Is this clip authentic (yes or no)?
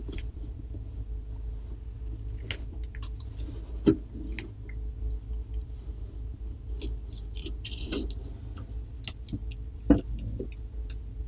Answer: yes